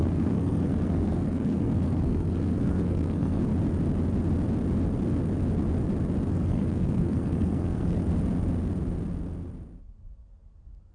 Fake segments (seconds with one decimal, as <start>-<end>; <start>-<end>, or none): 0.0-3.5; 6.3-8.0